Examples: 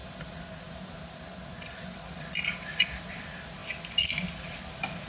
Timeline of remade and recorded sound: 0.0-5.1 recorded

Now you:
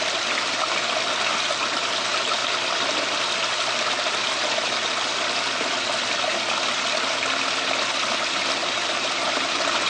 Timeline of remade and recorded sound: 0.0-8.6 recorded; 8.6-9.9 remade

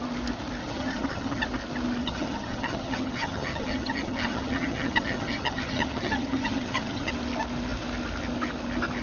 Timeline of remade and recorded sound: 0.0-0.6 recorded; 0.6-1.4 remade; 1.4-2.0 recorded; 2.0-7.1 remade; 7.1-9.0 recorded

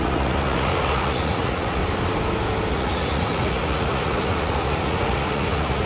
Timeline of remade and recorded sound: 0.0-1.8 remade; 1.8-2.7 recorded; 2.7-5.9 remade